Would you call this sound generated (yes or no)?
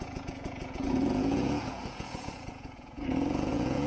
yes